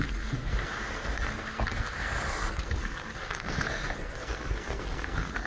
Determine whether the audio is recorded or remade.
remade